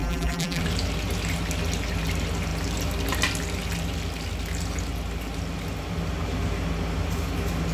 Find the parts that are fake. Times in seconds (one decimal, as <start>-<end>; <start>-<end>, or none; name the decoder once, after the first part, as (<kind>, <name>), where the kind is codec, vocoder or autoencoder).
0.0-0.6 (vocoder, BigVGAN v2)